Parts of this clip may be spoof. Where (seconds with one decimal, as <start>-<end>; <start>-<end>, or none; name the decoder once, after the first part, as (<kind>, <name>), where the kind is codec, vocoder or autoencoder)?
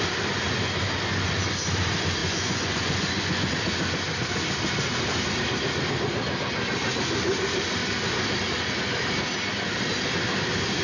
2.2-3.5 (vocoder, Vocos)